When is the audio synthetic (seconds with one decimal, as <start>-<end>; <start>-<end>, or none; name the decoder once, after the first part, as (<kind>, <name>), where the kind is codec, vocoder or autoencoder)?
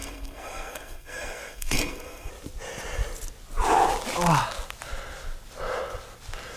0.0-2.3 (codec, SNAC)